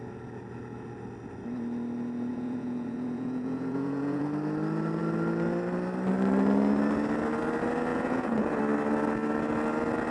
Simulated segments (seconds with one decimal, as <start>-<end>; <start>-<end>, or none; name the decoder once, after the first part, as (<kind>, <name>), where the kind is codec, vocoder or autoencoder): 2.3-4.2 (vocoder, Vocos); 7.9-8.6